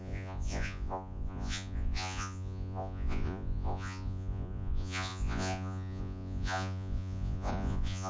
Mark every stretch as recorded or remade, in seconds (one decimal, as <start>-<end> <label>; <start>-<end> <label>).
0.0-8.1 remade